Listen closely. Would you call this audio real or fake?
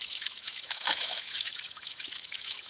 fake